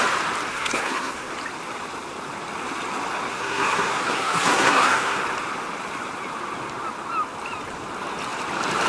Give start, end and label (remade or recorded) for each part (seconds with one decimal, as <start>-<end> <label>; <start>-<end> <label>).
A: 0.0-0.5 recorded; 0.5-1.3 remade; 1.3-3.3 recorded; 3.3-5.2 remade; 5.2-8.9 recorded